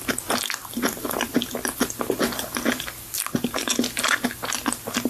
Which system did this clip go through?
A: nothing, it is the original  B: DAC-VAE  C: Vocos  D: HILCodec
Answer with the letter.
A